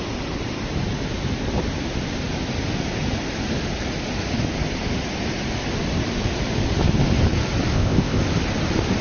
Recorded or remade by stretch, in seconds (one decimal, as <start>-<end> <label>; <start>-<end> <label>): 0.0-7.7 recorded; 7.7-8.2 remade; 8.2-9.0 recorded